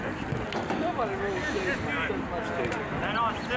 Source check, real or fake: real